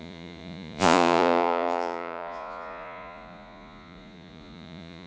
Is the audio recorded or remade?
remade